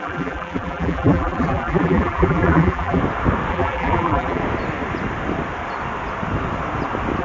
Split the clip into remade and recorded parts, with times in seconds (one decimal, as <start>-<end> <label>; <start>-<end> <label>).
0.0-3.0 remade; 3.0-3.5 recorded; 3.5-4.4 remade; 4.4-7.2 recorded